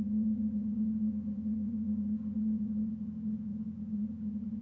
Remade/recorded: remade